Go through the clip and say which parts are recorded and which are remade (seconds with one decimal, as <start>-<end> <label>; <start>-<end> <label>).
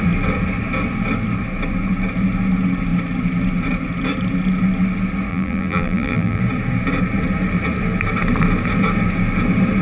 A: 0.0-5.3 recorded; 5.3-6.4 remade; 6.4-9.8 recorded